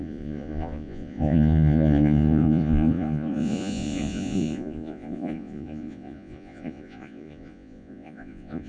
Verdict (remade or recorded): remade